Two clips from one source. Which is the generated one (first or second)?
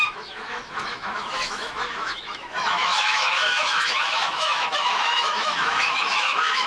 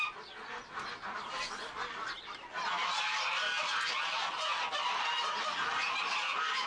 first